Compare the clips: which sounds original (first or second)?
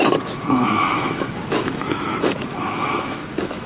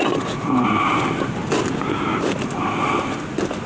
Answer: second